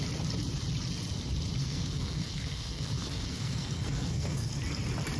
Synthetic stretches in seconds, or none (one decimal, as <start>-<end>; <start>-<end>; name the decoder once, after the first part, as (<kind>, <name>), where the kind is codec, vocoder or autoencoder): 1.6-4.5 (codec, SNAC)